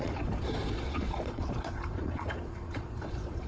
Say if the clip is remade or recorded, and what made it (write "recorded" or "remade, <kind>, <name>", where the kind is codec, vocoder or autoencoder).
remade, vocoder, Vocos